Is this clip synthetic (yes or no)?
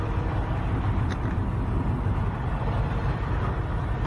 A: yes